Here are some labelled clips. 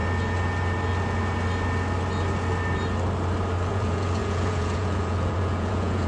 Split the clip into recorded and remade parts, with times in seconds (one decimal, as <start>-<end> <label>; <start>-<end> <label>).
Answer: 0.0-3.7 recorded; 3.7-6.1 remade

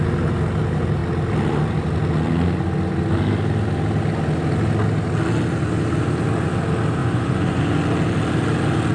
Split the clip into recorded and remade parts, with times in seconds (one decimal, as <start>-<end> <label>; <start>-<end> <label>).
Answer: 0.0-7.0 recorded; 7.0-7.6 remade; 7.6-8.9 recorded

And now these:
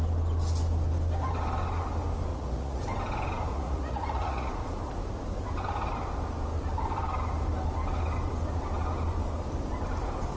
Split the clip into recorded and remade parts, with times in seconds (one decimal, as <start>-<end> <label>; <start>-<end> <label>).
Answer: 0.0-2.3 recorded; 2.3-2.8 remade; 2.8-3.5 recorded; 3.5-4.5 remade; 4.5-10.4 recorded